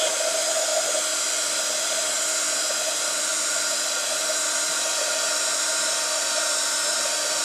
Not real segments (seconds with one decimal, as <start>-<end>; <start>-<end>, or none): 0.0-0.7; 2.7-3.3; 4.0-7.4